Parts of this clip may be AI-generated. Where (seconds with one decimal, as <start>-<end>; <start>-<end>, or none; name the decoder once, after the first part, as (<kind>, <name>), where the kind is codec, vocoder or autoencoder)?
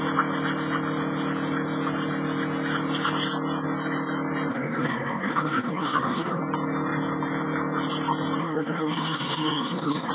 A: 4.5-6.4 (codec, SNAC); 8.4-10.1